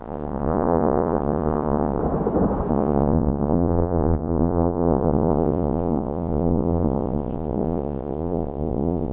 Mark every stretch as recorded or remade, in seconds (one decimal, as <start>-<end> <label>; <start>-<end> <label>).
0.0-2.0 remade; 2.0-2.7 recorded; 2.7-9.1 remade